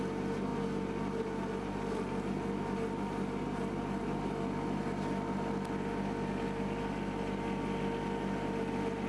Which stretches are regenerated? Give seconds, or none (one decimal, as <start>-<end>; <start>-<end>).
none

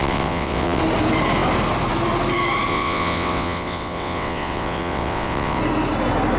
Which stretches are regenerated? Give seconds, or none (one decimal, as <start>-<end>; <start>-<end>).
0.0-0.8; 2.7-5.6

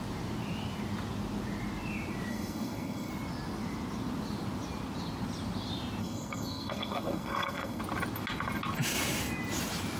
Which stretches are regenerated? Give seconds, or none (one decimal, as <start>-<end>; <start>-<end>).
2.3-3.1; 6.0-7.8

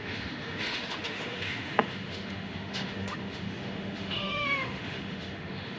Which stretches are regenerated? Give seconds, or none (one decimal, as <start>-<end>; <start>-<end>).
0.0-5.8

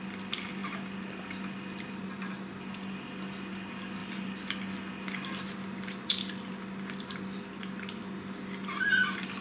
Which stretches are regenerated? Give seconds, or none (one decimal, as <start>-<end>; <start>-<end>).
none

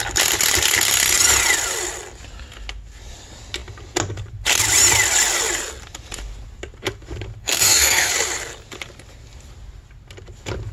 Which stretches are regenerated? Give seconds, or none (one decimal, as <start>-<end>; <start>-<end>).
7.4-8.1

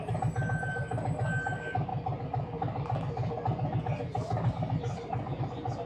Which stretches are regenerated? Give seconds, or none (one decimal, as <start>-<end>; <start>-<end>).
none

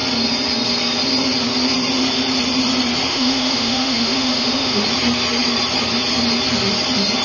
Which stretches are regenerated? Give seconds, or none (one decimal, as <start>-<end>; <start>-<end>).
3.1-4.8